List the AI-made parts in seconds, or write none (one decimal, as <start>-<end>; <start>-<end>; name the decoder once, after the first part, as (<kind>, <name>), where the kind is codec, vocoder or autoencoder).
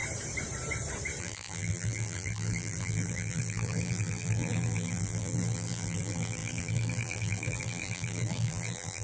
1.2-9.0 (vocoder, BigVGAN v2)